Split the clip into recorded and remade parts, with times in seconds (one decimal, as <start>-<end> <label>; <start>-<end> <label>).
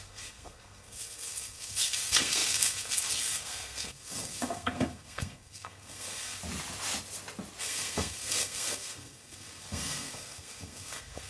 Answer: 0.0-6.4 remade; 6.4-7.6 recorded; 7.6-11.3 remade